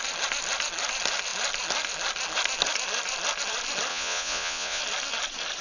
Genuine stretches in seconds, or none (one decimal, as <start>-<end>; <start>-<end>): 0.0-3.9; 4.8-5.6